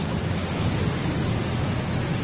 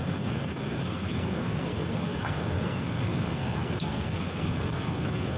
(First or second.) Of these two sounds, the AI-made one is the second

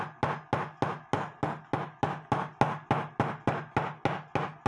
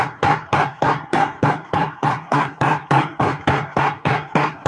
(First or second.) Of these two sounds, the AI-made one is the second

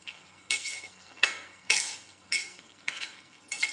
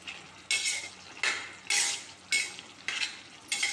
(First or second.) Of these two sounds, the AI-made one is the first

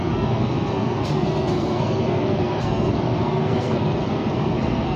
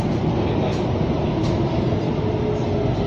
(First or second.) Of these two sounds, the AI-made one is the first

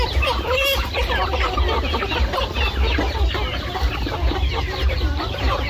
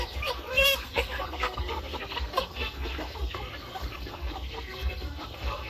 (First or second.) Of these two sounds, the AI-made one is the second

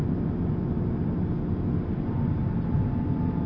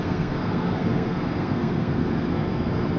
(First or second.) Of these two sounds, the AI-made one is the second